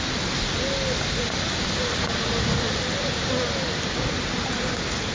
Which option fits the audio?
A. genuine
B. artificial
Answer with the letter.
A